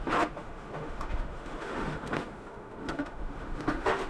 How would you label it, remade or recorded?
remade